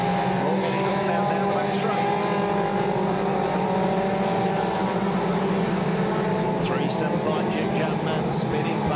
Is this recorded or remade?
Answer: recorded